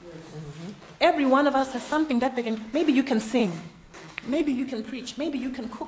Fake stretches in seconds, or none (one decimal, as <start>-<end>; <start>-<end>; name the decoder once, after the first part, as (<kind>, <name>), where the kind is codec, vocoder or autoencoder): 1.6-2.6 (codec, SNAC); 3.4-5.1